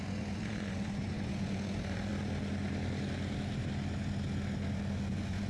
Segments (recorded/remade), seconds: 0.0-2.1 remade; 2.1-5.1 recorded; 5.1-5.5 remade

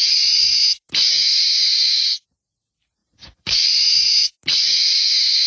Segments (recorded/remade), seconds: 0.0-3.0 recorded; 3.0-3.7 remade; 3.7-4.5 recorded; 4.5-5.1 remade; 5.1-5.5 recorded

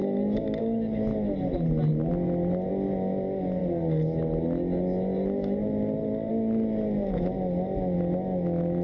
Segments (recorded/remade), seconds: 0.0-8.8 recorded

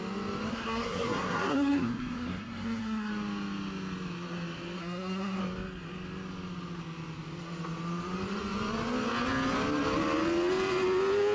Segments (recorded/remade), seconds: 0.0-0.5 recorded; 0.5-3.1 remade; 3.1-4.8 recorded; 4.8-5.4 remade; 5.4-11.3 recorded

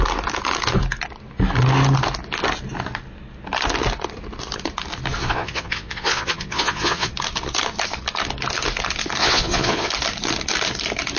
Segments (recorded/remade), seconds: 0.0-5.2 recorded; 5.2-7.1 remade; 7.1-9.2 recorded; 9.2-9.9 remade; 9.9-11.2 recorded